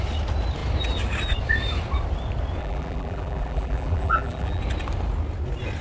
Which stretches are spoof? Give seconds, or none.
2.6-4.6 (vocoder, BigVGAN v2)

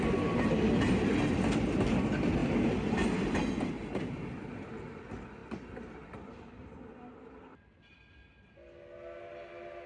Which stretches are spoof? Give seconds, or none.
none